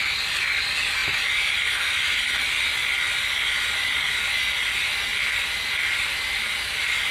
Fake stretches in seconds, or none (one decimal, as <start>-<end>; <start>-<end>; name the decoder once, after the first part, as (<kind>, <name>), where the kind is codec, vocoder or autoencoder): 5.1-7.1 (vocoder, BigVGAN v2)